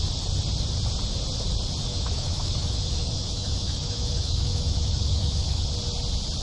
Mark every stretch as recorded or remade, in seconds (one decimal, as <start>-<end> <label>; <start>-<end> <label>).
0.0-1.9 recorded; 1.9-5.7 remade; 5.7-6.4 recorded